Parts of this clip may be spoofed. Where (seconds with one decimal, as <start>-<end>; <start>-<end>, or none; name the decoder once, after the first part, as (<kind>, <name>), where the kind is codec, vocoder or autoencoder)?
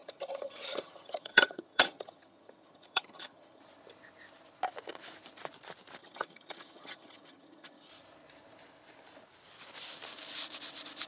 0.0-3.6 (vocoder, HiFi-GAN); 6.0-7.9